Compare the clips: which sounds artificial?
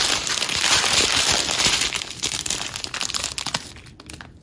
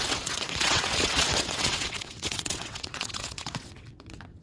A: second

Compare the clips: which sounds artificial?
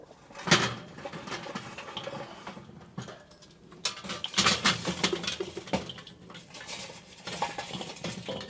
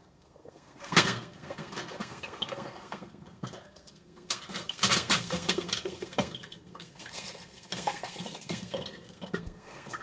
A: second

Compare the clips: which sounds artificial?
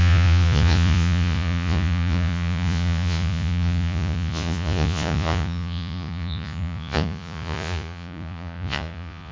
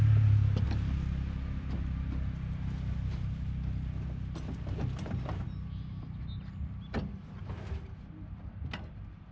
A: first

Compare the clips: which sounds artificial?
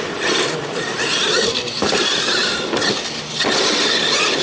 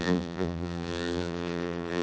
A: second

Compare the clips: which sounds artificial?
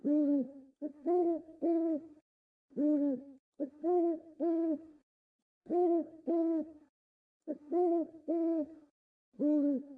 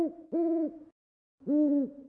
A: first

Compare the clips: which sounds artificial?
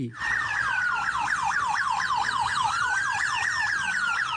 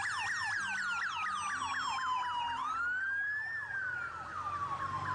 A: first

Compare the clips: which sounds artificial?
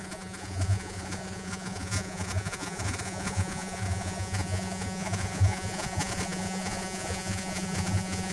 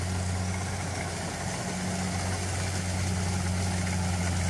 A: first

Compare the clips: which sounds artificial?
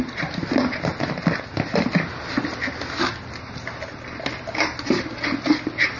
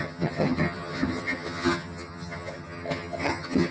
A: second